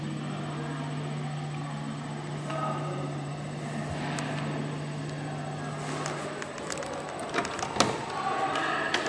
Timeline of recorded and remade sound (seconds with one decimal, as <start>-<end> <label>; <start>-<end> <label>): 0.0-2.5 recorded; 2.5-3.3 remade; 3.3-9.1 recorded